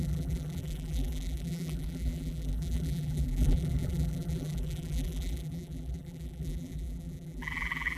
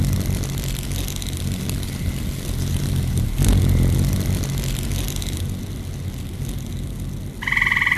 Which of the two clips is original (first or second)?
second